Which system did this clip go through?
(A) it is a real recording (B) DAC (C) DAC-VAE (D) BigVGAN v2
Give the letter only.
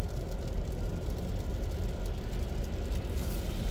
A